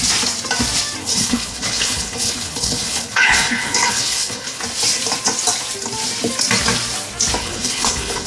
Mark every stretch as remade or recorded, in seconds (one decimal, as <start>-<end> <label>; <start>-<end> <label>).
0.0-1.0 recorded; 1.0-4.6 remade; 4.6-7.4 recorded; 7.4-8.3 remade